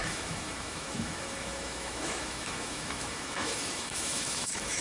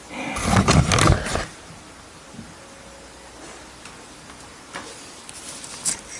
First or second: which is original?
second